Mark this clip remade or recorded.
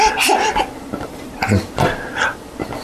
recorded